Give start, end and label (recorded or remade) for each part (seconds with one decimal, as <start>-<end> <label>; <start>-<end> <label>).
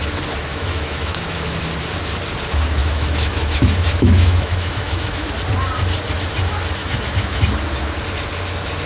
0.0-0.5 recorded; 0.5-1.6 remade; 1.6-2.8 recorded; 2.8-5.3 remade; 5.3-6.8 recorded; 6.8-7.4 remade; 7.4-8.9 recorded